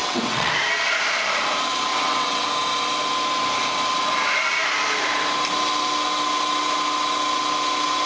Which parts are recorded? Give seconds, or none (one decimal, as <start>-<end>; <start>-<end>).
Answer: 0.5-1.9; 2.5-8.1